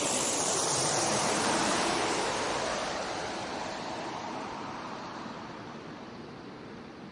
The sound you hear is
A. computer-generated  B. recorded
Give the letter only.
A